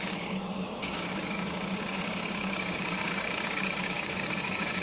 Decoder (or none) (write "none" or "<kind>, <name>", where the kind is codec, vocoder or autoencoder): codec, DAC